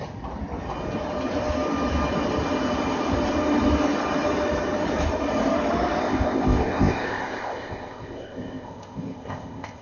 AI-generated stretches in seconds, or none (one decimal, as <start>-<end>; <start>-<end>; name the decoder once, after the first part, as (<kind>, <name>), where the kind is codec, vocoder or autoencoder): 6.0-9.8 (codec, ZipCodec)